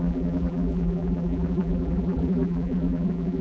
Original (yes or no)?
no